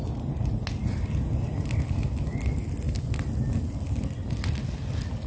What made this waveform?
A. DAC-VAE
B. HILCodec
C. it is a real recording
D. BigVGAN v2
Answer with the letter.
C